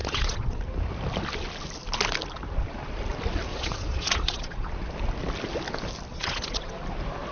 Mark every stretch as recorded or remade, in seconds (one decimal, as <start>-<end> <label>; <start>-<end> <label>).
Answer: 0.0-0.6 remade; 0.6-3.5 recorded; 3.5-4.7 remade; 4.7-6.1 recorded; 6.1-6.8 remade; 6.8-7.3 recorded